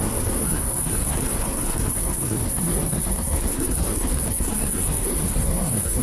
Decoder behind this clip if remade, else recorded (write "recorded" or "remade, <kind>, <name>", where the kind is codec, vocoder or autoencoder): remade, codec, SNAC